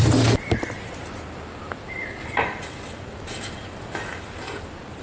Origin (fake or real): real